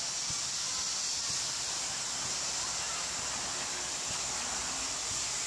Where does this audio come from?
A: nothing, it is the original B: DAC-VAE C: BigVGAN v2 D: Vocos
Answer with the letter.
A